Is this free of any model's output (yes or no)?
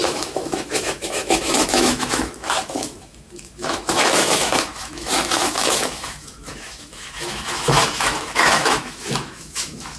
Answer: no